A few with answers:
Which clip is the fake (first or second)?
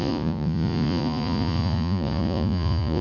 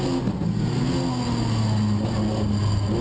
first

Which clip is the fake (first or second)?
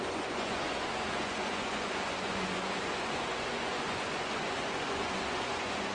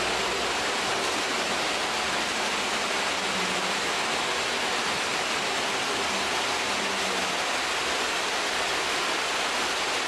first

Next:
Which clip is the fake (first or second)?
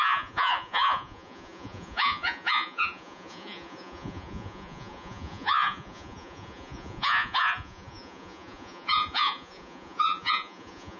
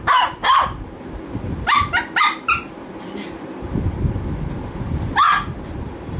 first